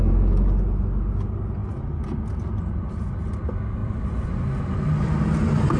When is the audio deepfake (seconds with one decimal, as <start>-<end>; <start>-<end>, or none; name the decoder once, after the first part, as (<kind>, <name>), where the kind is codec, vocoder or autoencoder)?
3.8-5.8 (vocoder, BigVGAN v2)